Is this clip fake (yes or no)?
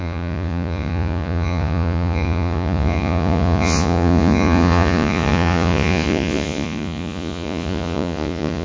yes